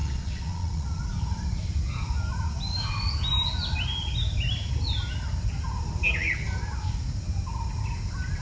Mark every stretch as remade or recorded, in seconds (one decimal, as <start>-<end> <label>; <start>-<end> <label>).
0.0-1.0 remade; 1.0-8.4 recorded